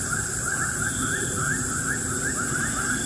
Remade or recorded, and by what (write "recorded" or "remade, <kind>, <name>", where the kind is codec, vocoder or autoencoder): recorded